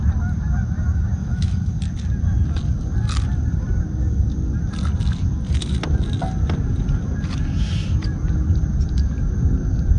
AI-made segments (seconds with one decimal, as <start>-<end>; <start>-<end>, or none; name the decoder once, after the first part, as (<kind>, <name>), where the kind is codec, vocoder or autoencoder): 1.2-1.7 (autoencoder, DAC-VAE)